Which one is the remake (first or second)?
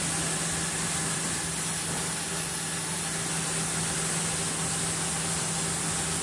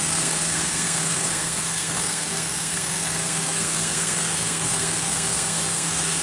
second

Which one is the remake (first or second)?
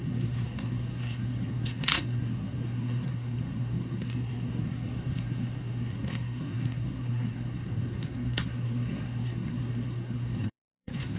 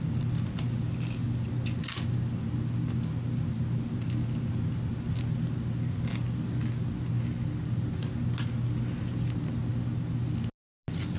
first